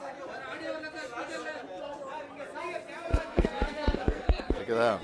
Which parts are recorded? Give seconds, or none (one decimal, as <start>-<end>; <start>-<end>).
0.0-3.1; 4.6-5.0